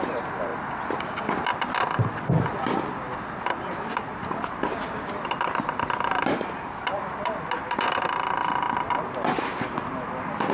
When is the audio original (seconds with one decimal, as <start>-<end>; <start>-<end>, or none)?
0.0-10.5